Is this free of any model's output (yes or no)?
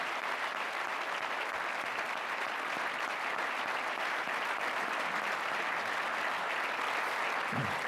yes